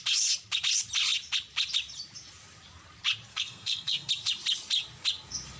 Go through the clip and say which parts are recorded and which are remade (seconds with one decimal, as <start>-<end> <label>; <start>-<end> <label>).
0.0-3.3 recorded; 3.3-4.1 remade; 4.1-5.6 recorded